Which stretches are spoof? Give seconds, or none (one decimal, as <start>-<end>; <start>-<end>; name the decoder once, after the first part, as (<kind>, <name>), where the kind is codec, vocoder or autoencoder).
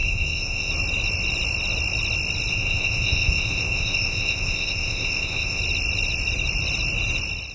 0.0-0.7 (codec, ZipCodec); 2.5-5.6